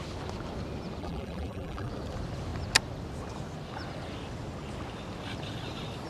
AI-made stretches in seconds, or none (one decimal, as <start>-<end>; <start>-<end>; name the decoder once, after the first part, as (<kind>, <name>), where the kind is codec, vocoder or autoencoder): 1.0-1.9 (vocoder, BigVGAN v2)